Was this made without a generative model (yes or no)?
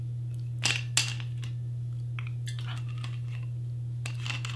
yes